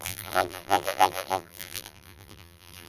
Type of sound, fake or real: fake